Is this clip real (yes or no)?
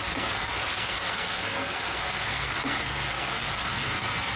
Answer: no